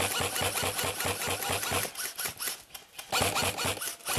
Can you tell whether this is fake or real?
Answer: real